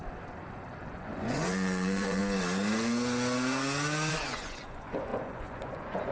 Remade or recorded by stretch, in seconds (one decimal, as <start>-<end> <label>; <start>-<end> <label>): 0.0-0.8 recorded; 0.8-2.2 remade; 2.2-4.1 recorded; 4.1-6.1 remade